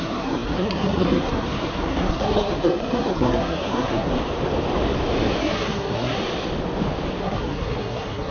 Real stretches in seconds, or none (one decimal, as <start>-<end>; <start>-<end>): 4.1-5.4; 6.2-7.2